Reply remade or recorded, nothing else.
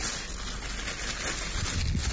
recorded